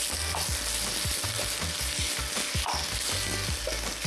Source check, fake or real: real